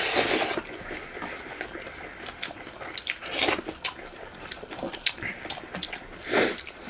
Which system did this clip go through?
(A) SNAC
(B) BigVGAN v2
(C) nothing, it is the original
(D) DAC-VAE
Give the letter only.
C